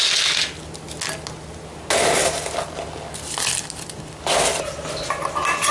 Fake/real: real